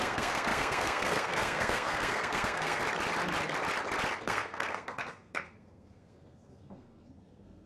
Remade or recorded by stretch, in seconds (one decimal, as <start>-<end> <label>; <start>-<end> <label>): 0.0-2.8 remade; 2.8-4.2 recorded; 4.2-7.7 remade